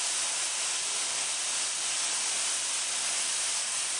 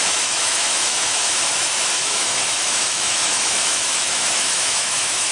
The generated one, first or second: second